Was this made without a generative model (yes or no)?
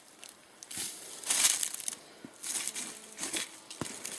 yes